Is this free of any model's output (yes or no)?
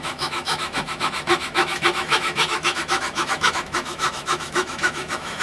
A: no